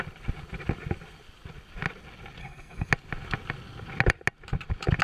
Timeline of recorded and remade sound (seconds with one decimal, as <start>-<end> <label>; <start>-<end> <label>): 0.0-2.4 recorded; 2.4-2.9 remade; 2.9-5.0 recorded